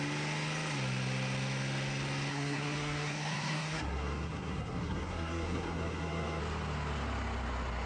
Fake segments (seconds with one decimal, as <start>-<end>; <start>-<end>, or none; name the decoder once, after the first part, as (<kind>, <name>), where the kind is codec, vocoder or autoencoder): 2.3-6.4 (codec, SNAC)